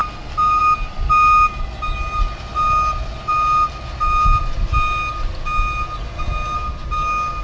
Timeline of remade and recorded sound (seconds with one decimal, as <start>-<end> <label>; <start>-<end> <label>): 0.0-7.4 recorded